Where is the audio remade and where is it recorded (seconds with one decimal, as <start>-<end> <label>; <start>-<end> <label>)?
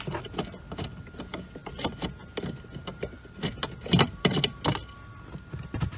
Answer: 0.0-6.0 recorded